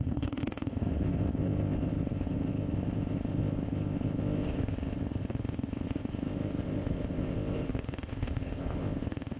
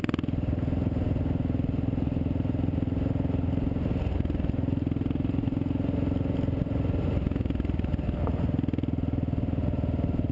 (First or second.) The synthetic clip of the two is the first